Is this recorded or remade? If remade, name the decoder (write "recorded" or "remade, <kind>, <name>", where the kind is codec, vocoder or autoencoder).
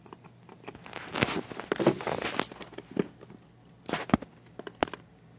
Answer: recorded